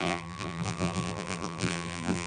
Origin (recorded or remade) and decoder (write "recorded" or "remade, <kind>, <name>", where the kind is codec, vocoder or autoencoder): remade, vocoder, BigVGAN v2